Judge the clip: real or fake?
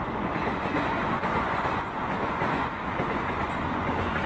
fake